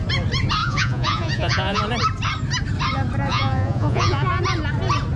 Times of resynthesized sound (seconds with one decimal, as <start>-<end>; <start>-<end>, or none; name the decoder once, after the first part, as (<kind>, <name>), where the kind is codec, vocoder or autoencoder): 0.6-1.8 (vocoder, Vocos); 3.3-4.3